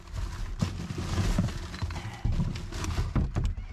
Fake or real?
real